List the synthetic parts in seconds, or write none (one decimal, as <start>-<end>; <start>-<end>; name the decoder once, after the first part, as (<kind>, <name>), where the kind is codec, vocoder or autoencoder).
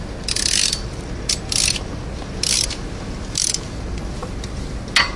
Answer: none